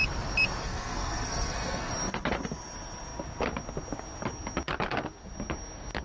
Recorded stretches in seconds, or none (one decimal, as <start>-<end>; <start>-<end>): 0.0-0.6; 1.9-6.0